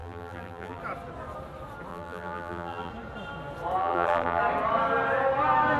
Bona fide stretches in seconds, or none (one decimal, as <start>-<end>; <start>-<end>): 0.8-1.9; 2.9-3.8; 4.4-5.8